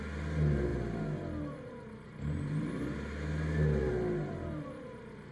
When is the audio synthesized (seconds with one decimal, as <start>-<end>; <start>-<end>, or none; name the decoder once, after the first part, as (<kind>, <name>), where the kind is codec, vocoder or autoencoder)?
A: none